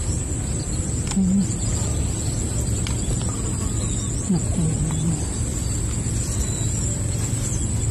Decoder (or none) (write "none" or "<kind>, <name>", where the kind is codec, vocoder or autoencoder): none